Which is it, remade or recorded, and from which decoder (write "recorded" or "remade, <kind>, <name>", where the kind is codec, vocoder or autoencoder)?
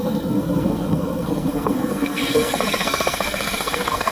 remade, codec, SNAC